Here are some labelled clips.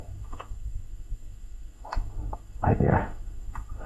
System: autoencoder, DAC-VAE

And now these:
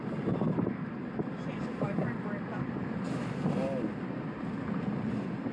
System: none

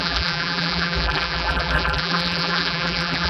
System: vocoder, BigVGAN v2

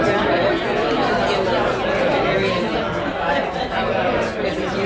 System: none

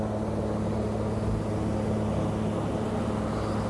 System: none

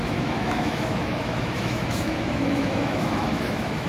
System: autoencoder, DAC-VAE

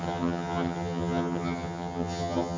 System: vocoder, HiFi-GAN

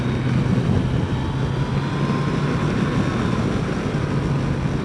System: none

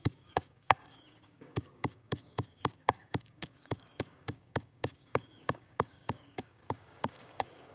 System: codec, DAC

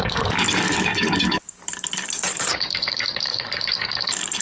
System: codec, DAC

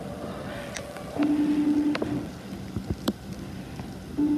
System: none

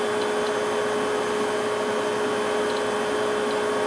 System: none